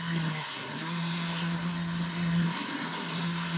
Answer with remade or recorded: remade